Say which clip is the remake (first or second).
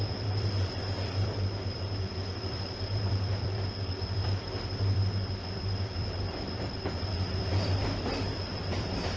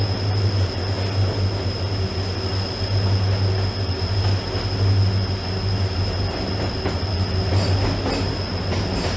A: first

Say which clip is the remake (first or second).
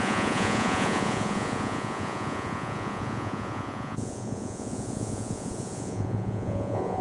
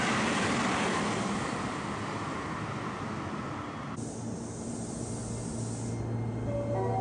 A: first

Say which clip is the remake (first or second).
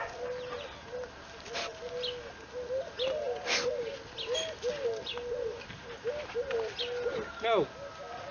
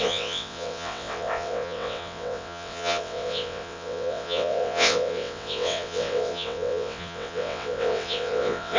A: second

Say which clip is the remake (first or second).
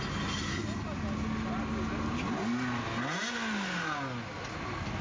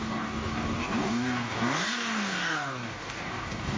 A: second